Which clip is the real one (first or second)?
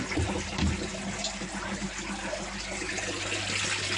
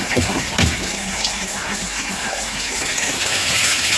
first